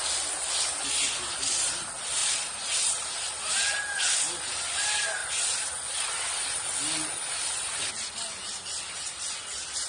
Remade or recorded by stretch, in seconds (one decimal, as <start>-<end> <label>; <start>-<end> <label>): 0.0-2.2 recorded; 2.2-3.5 remade; 3.5-9.9 recorded